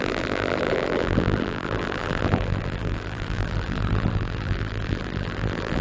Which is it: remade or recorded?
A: remade